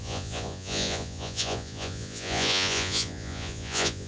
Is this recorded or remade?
remade